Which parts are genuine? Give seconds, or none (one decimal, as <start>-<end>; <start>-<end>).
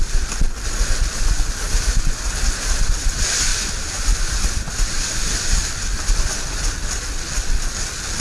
0.0-8.2